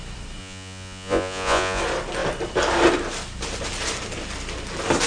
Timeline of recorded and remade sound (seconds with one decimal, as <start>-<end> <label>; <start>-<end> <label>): 0.0-0.4 recorded; 0.4-1.8 remade; 1.8-5.1 recorded